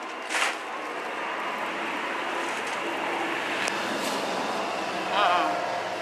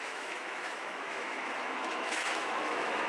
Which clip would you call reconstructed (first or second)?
second